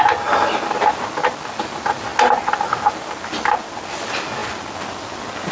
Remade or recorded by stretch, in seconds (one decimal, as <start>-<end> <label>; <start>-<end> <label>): 0.0-5.5 recorded

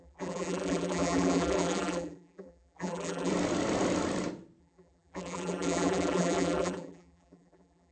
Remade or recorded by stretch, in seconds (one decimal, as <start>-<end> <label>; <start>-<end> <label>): 0.0-3.3 remade; 3.3-4.6 recorded; 4.6-7.9 remade

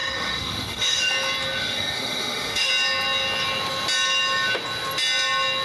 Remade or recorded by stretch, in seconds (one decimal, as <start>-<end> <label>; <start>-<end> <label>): 0.0-1.1 remade; 1.1-1.6 recorded; 1.6-2.7 remade; 2.7-5.6 recorded

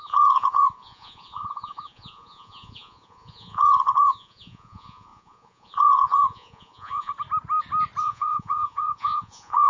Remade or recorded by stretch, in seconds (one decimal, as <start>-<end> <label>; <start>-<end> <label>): 0.0-7.1 remade; 7.1-8.0 recorded; 8.0-9.7 remade